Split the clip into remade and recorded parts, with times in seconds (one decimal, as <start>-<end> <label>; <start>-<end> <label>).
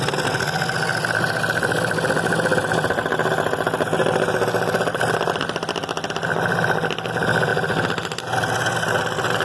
0.0-9.4 recorded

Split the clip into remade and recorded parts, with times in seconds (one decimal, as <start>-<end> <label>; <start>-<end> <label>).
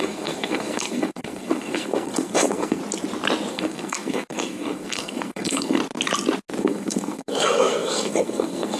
0.0-2.8 remade; 2.8-3.5 recorded; 3.5-5.8 remade; 5.8-6.6 recorded; 6.6-8.8 remade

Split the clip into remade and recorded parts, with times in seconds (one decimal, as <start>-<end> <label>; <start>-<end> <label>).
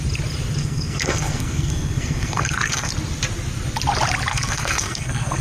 0.0-0.6 recorded; 0.6-2.9 remade; 2.9-4.3 recorded; 4.3-5.4 remade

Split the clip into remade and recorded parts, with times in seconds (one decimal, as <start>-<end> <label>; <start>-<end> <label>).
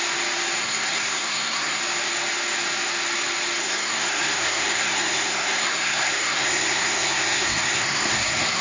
0.0-0.6 recorded; 0.6-1.8 remade; 1.8-3.6 recorded; 3.6-8.6 remade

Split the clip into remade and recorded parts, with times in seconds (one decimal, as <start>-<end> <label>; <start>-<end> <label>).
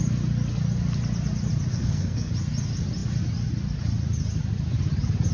0.0-1.7 recorded; 1.7-2.3 remade; 2.3-5.3 recorded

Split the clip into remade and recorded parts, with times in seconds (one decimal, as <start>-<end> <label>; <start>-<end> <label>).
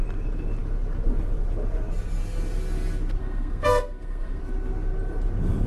0.0-3.2 recorded; 3.2-4.4 remade; 4.4-5.7 recorded